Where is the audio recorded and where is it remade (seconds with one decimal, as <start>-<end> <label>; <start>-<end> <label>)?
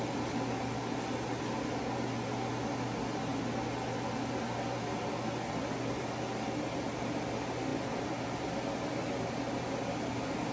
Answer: 0.0-10.5 recorded